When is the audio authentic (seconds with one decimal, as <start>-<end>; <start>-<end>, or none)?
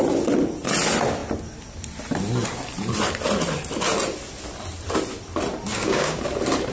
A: 0.0-5.7; 6.2-6.7